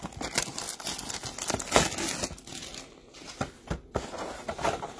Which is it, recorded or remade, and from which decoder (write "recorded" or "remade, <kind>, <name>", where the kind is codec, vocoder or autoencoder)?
recorded